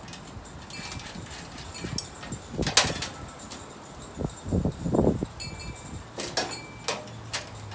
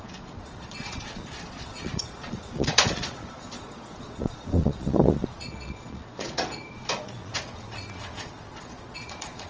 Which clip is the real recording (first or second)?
first